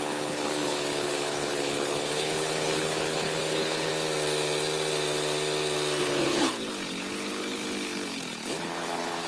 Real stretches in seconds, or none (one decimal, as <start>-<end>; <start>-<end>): 3.9-6.0